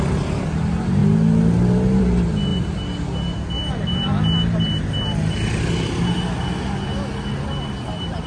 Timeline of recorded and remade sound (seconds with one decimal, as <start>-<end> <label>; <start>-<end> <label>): 0.0-8.3 recorded